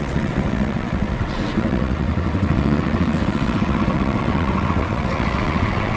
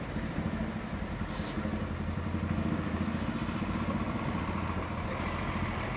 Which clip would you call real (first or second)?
second